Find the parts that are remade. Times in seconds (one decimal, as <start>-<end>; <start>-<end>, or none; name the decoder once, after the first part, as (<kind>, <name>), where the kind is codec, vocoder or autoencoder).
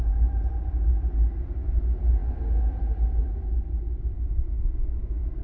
none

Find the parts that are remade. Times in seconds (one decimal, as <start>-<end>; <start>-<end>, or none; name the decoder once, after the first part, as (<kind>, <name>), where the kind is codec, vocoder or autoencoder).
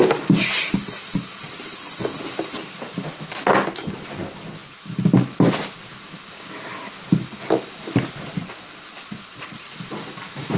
8.4-9.6 (vocoder, Vocos)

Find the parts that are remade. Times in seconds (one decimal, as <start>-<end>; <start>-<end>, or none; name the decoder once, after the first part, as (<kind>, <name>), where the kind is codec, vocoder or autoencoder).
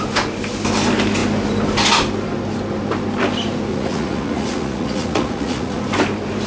3.7-5.8 (vocoder, Vocos)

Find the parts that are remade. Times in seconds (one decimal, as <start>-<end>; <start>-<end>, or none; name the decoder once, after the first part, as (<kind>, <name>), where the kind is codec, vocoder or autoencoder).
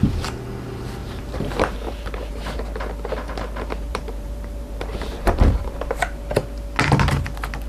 1.0-2.3 (vocoder, BigVGAN v2); 3.9-6.0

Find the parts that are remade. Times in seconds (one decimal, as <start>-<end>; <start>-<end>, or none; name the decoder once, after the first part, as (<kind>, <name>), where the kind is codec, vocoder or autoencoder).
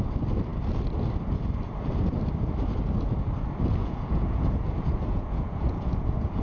3.8-6.4 (vocoder, Vocos)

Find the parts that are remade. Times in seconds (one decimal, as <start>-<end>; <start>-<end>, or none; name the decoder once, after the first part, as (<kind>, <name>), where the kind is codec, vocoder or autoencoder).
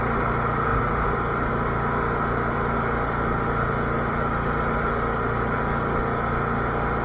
none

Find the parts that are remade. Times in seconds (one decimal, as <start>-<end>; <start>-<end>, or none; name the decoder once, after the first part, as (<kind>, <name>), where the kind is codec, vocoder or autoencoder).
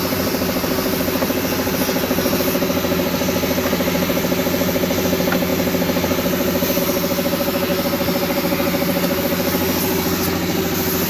none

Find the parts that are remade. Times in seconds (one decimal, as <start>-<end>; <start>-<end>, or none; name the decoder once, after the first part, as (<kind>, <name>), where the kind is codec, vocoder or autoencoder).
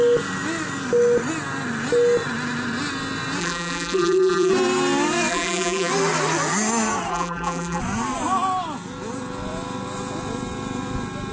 3.4-4.5 (vocoder, BigVGAN v2); 5.3-5.9; 7.1-7.8